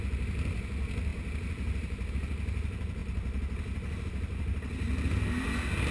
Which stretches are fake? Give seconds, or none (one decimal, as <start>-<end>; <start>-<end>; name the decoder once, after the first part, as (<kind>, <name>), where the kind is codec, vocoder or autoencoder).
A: none